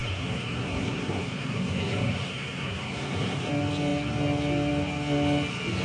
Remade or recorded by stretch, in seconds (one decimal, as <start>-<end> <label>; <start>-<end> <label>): 0.0-3.5 remade; 3.5-5.8 recorded